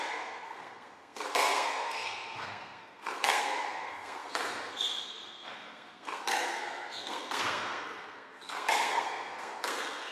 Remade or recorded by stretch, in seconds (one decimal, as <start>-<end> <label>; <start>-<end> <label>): 0.0-10.1 remade